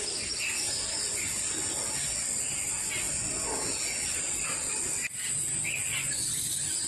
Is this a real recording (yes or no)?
yes